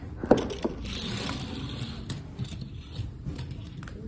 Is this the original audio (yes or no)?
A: yes